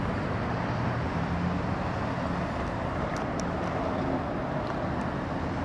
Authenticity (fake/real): real